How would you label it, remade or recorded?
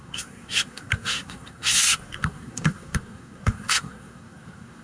remade